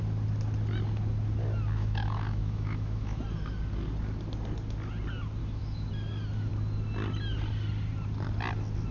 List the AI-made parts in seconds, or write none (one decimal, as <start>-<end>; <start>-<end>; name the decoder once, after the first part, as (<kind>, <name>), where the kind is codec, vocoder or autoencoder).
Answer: 1.8-3.2 (autoencoder, DAC-VAE); 5.4-5.9